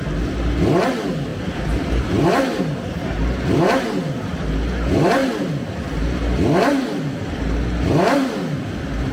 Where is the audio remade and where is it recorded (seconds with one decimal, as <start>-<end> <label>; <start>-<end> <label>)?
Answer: 0.0-1.3 recorded; 1.3-2.6 remade; 2.6-9.1 recorded